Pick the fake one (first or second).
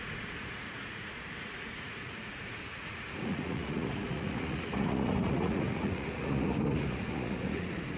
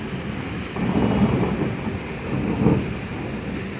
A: first